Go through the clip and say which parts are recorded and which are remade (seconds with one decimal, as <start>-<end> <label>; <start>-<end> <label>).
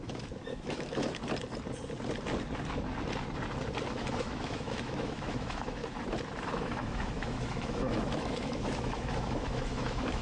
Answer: 0.0-1.2 remade; 1.2-3.9 recorded; 3.9-5.8 remade; 5.8-6.4 recorded; 6.4-10.2 remade